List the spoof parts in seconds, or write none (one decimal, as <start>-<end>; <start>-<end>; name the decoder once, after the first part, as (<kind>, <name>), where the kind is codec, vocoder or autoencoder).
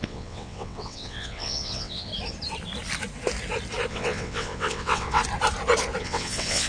0.0-2.1 (vocoder, WaveNeXt); 3.9-5.2; 6.0-6.7